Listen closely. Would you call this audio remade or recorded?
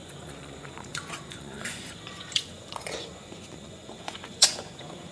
remade